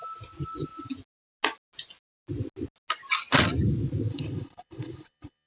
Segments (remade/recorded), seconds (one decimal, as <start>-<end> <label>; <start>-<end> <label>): 0.0-4.1 recorded; 4.1-5.5 remade